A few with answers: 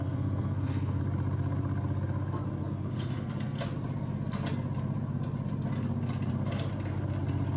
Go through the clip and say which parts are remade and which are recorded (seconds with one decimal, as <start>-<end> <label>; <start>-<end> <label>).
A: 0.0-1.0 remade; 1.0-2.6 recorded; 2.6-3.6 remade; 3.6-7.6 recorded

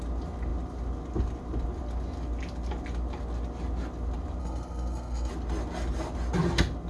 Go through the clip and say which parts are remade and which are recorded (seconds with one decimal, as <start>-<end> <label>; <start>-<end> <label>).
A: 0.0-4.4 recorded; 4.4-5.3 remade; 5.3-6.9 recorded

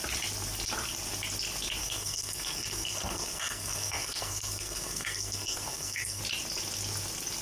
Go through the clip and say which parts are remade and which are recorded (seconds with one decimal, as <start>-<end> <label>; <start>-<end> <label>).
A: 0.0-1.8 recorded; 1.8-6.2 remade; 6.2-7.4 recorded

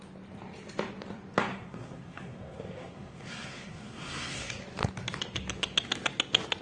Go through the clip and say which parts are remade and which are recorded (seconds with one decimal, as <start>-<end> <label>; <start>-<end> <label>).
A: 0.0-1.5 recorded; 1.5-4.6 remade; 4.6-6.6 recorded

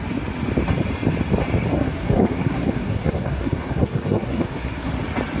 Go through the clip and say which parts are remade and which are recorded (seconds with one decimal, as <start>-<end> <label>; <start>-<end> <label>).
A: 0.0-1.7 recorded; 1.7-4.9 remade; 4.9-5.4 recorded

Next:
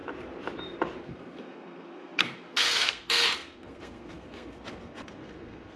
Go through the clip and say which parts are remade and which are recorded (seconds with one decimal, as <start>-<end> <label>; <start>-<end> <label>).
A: 0.0-1.0 recorded; 1.0-5.8 remade

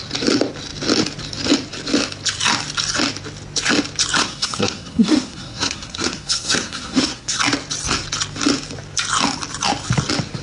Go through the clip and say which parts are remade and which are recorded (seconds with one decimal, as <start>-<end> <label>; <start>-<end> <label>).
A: 0.0-4.2 recorded; 4.2-7.4 remade; 7.4-10.4 recorded

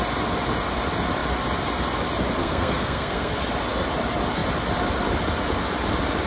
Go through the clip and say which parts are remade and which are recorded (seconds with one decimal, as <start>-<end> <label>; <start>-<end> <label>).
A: 0.0-2.4 recorded; 2.4-3.4 remade; 3.4-6.3 recorded